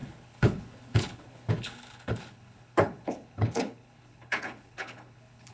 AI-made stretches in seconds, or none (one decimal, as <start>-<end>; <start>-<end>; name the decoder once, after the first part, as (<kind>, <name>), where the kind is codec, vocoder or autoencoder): 0.0-5.5 (codec, HILCodec)